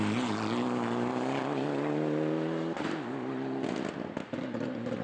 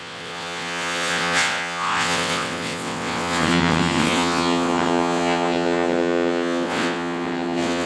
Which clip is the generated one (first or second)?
second